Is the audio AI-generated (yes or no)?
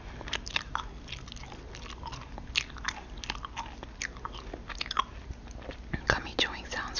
no